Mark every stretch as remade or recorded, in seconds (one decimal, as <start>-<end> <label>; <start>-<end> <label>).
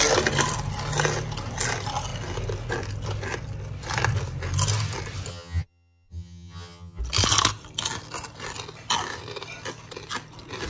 0.0-5.3 recorded; 5.3-7.0 remade; 7.0-10.7 recorded